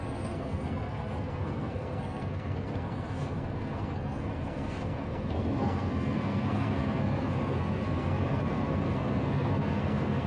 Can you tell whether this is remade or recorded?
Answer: remade